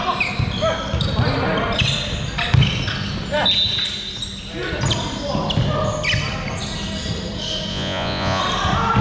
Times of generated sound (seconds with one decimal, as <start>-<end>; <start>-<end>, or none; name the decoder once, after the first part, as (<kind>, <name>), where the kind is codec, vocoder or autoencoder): 7.7-8.4 (vocoder, Vocos)